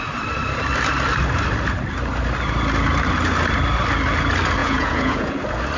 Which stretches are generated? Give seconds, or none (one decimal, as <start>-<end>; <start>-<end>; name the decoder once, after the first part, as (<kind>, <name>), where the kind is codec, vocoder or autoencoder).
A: 4.6-5.3 (vocoder, Vocos)